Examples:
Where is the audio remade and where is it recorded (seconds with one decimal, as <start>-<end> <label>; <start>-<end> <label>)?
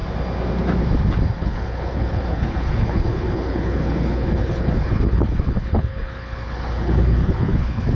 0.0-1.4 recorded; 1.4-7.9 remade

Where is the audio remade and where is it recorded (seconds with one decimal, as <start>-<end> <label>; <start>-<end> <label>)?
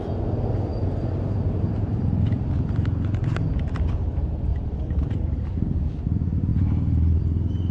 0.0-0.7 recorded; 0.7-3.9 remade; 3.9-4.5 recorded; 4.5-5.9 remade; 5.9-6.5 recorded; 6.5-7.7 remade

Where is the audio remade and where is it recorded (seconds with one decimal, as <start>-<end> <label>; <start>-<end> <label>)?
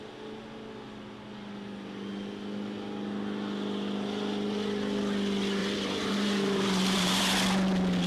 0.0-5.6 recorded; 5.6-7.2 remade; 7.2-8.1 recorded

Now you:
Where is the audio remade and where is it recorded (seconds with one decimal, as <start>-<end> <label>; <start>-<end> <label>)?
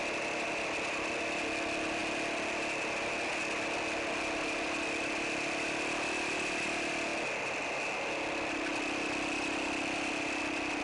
0.0-10.8 recorded